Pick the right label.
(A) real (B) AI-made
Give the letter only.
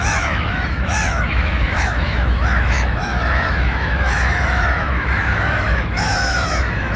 B